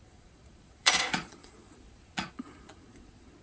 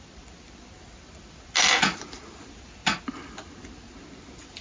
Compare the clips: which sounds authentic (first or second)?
second